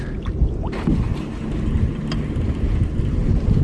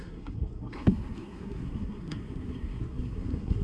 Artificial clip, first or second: second